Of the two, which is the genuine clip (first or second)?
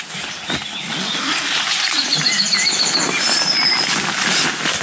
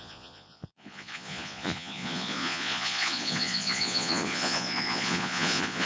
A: first